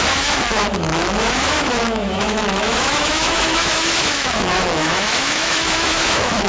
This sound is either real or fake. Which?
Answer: fake